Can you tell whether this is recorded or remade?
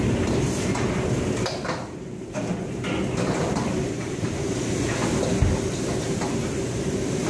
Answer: recorded